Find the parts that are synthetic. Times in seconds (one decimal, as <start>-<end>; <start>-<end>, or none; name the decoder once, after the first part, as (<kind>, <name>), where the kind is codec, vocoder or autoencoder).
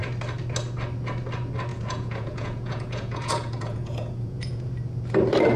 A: 1.7-4.7 (vocoder, Vocos)